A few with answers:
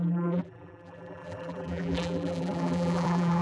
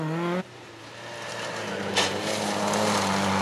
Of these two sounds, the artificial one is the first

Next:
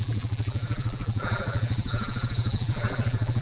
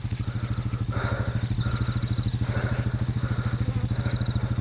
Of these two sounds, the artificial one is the first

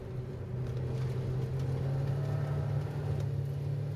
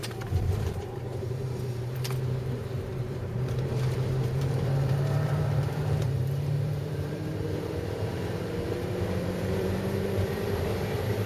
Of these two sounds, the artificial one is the second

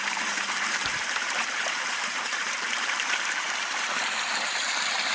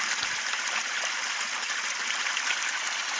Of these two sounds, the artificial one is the first